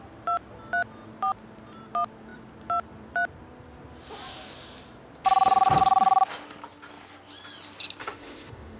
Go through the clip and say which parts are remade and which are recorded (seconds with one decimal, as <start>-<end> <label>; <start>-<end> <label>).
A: 0.0-8.0 recorded; 8.0-8.8 remade